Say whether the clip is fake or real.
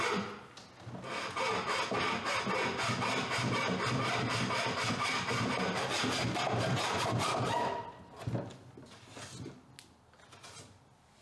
real